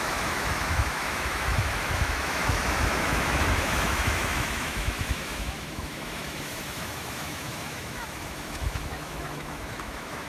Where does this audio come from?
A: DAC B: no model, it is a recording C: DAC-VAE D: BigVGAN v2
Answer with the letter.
C